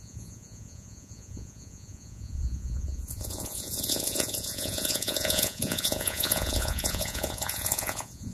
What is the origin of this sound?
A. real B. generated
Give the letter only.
B